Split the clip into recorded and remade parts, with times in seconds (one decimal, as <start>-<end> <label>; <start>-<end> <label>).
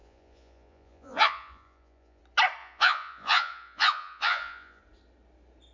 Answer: 0.0-2.2 remade; 2.2-2.6 recorded; 2.6-4.8 remade; 4.8-5.7 recorded